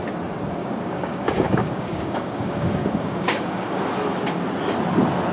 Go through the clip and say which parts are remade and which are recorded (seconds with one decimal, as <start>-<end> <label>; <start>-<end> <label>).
0.0-0.6 recorded; 0.6-3.8 remade; 3.8-5.3 recorded